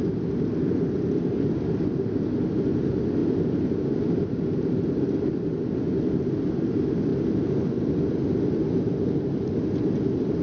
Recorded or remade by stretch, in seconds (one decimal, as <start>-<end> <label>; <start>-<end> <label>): 0.0-10.4 recorded